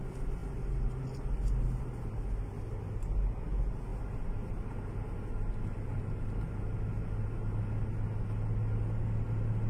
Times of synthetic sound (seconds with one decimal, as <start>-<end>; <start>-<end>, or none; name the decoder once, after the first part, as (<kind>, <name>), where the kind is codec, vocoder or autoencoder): none